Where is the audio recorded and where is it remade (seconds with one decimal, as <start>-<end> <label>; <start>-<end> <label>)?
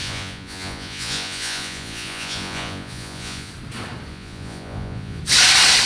0.0-3.5 remade; 3.5-4.1 recorded; 4.1-5.2 remade; 5.2-5.9 recorded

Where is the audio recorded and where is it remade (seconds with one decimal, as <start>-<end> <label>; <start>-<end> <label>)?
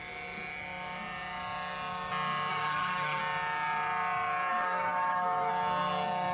0.0-2.5 recorded; 2.5-3.2 remade; 3.2-4.5 recorded; 4.5-5.5 remade; 5.5-6.3 recorded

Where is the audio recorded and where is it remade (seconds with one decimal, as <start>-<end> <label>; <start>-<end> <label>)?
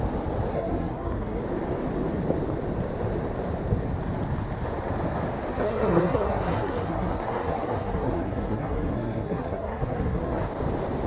0.0-0.5 recorded; 0.5-1.4 remade; 1.4-5.5 recorded; 5.5-10.4 remade; 10.4-11.1 recorded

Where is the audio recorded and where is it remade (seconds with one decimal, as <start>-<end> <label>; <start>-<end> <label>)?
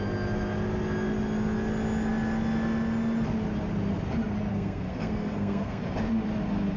0.0-4.5 recorded; 4.5-5.8 remade; 5.8-6.8 recorded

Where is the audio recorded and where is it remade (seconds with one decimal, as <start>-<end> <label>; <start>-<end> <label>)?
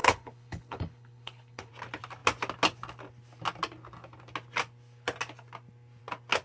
0.0-1.7 remade; 1.7-6.4 recorded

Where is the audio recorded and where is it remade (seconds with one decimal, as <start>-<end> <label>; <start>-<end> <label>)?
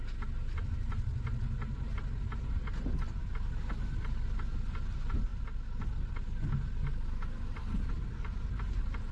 0.0-9.1 recorded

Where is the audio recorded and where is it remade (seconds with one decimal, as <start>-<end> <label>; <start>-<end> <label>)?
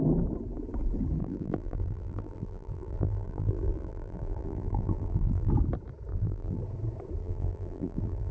0.0-1.2 recorded; 1.2-5.5 remade; 5.5-6.1 recorded; 6.1-6.6 remade; 6.6-7.2 recorded; 7.2-8.3 remade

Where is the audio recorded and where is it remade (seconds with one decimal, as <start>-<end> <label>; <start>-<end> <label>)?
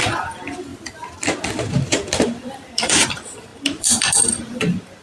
0.0-0.7 remade; 0.7-1.5 recorded; 1.5-5.0 remade